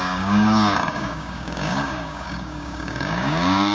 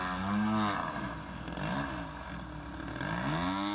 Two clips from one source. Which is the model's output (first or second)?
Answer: first